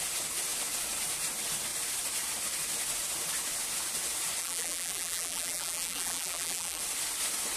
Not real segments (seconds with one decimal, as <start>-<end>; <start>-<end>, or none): 4.4-6.8